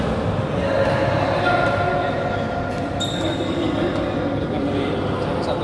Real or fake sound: real